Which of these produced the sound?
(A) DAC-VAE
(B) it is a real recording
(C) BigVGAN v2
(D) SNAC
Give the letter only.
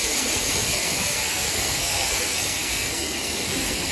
D